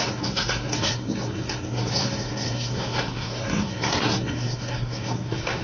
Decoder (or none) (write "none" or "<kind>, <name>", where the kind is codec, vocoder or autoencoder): codec, SNAC